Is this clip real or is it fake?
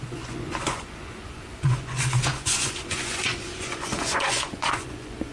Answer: fake